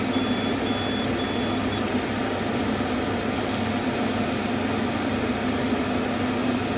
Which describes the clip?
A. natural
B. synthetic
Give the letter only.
A